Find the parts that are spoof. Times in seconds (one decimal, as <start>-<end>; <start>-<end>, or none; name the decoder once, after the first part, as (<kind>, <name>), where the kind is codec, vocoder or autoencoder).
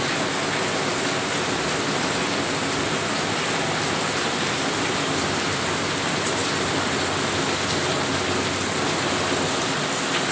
none